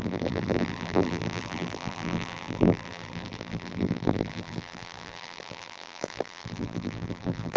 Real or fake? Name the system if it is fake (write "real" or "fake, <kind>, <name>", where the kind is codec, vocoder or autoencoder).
fake, vocoder, BigVGAN v2